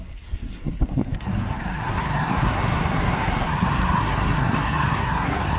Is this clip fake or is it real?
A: fake